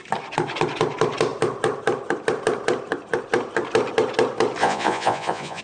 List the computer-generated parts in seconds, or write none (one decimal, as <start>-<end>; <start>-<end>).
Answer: 4.6-5.6